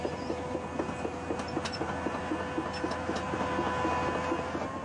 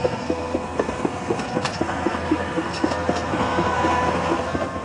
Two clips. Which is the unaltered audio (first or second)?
first